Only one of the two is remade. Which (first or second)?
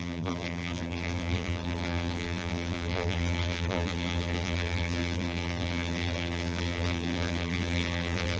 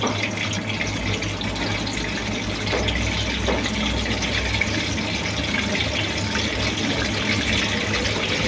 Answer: first